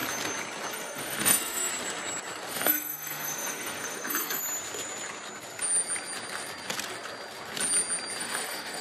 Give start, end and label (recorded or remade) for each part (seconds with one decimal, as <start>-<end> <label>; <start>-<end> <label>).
0.0-0.7 recorded; 0.7-1.7 remade; 1.7-2.5 recorded; 2.5-4.4 remade; 4.4-8.2 recorded; 8.2-8.8 remade